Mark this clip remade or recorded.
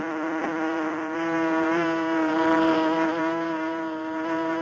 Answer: remade